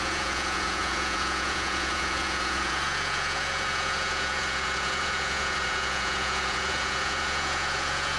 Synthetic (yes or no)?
yes